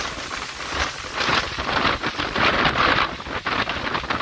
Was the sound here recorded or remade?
remade